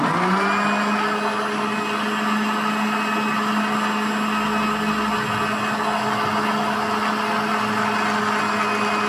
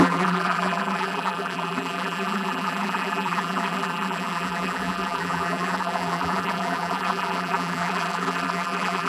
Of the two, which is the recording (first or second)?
first